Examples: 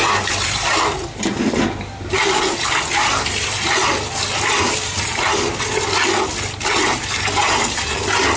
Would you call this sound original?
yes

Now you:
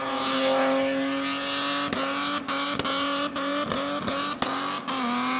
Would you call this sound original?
yes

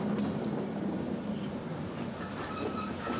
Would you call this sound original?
yes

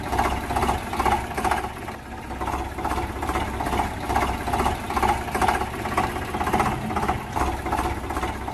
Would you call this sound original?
yes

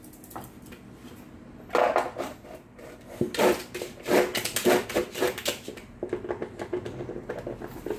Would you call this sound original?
yes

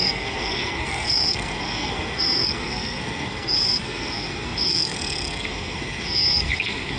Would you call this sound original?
no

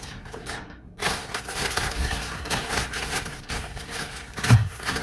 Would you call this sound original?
no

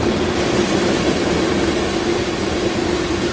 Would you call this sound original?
yes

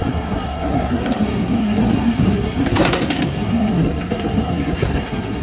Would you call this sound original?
no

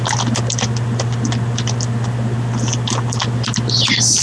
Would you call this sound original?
yes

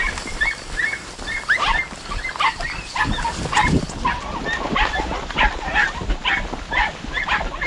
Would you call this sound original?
yes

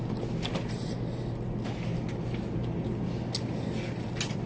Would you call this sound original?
yes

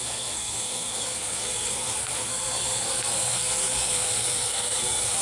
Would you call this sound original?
no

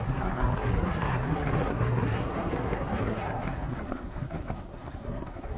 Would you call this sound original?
no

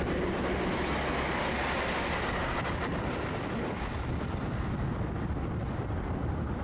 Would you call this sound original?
yes